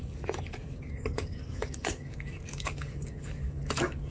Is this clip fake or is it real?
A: fake